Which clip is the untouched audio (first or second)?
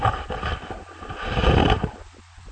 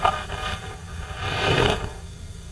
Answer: first